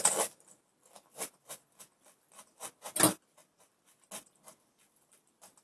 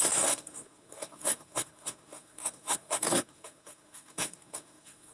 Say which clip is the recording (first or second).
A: first